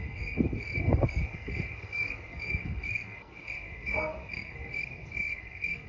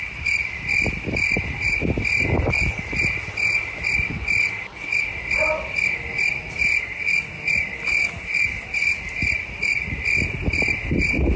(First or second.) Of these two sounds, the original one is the second